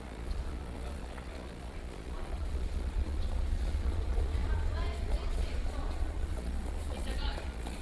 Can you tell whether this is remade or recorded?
remade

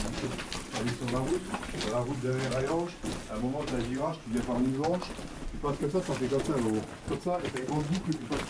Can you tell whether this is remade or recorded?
recorded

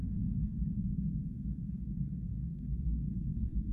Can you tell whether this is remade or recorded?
remade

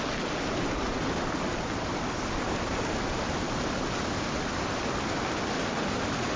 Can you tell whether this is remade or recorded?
recorded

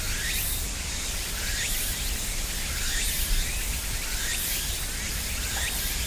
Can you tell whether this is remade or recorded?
recorded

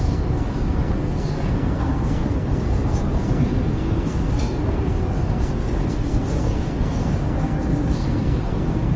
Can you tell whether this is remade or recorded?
remade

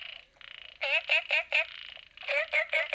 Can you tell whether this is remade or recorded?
recorded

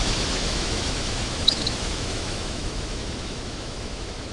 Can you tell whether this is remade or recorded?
remade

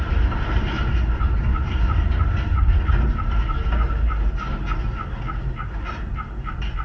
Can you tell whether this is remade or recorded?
recorded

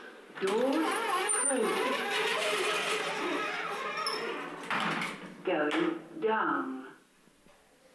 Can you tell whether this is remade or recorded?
recorded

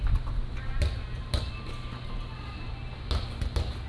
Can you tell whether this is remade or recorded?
recorded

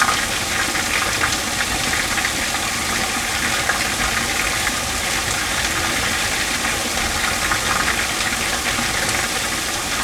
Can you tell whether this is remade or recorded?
recorded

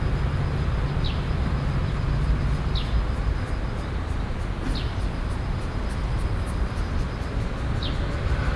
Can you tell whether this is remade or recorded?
recorded